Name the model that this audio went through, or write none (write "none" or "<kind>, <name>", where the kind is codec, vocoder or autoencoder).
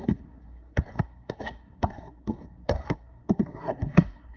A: codec, SNAC